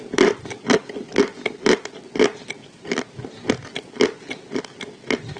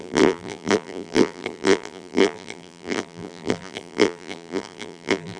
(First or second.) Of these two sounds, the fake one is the second